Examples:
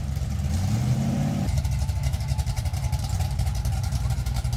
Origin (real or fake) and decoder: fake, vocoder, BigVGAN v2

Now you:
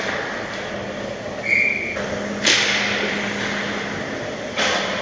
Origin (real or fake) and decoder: real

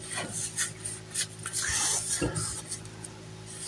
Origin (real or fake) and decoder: real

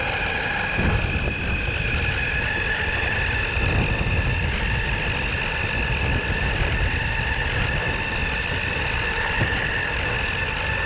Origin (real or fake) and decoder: real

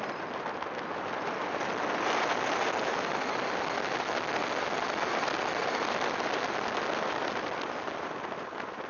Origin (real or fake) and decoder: real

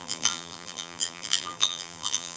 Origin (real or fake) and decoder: fake, vocoder, BigVGAN v2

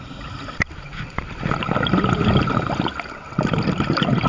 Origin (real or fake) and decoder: fake, vocoder, BigVGAN v2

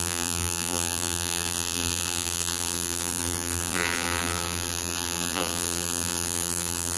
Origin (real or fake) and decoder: fake, vocoder, BigVGAN v2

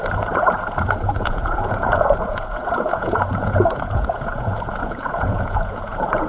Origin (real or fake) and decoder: fake, vocoder, Vocos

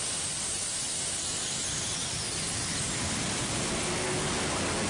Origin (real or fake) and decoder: real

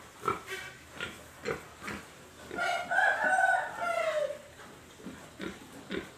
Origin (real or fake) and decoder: real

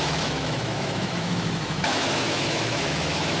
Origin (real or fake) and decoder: fake, autoencoder, DAC-VAE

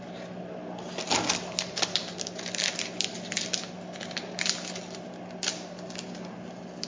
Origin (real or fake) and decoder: real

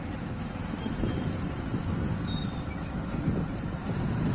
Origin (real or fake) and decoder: real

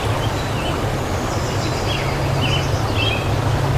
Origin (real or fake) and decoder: real